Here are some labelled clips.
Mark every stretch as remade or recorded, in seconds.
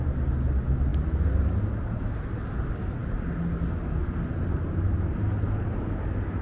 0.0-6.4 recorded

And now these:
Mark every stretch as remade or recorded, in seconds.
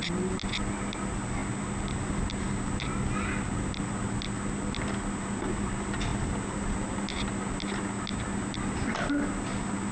0.0-9.9 recorded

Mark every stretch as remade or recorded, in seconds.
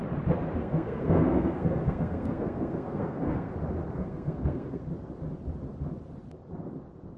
0.0-0.6 recorded; 0.6-3.5 remade; 3.5-4.0 recorded; 4.0-4.8 remade; 4.8-7.2 recorded